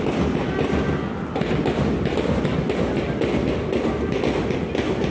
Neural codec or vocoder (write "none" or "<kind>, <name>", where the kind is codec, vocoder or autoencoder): none